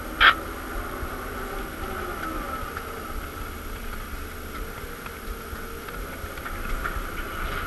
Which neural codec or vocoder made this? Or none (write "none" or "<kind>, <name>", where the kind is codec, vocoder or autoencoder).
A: none